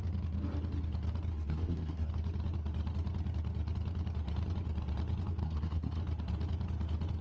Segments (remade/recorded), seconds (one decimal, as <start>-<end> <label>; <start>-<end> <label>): 0.0-1.3 recorded; 1.3-2.1 remade; 2.1-5.4 recorded; 5.4-6.0 remade; 6.0-7.2 recorded